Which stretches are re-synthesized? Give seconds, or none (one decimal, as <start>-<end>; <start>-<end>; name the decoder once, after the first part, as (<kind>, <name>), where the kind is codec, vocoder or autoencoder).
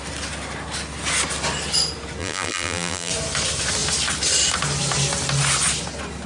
2.2-3.1 (vocoder, BigVGAN v2)